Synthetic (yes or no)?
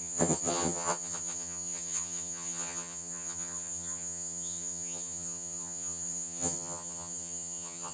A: yes